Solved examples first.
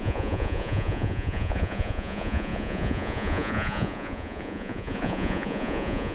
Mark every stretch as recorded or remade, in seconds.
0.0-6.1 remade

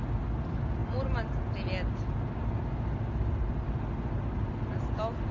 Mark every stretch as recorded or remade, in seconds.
0.0-5.3 recorded

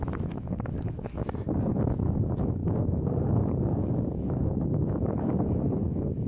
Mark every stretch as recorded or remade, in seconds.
0.0-1.2 remade; 1.2-1.8 recorded; 1.8-6.3 remade

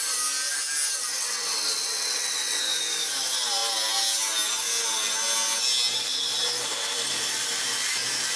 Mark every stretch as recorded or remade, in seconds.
0.0-1.1 recorded; 1.1-2.6 remade; 2.6-8.4 recorded

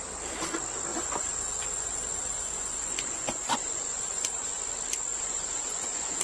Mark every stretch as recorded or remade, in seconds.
0.0-0.9 recorded; 0.9-4.6 remade; 4.6-5.1 recorded; 5.1-6.2 remade